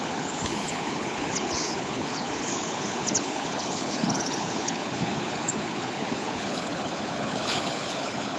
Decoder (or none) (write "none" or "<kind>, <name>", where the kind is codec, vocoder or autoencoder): codec, HILCodec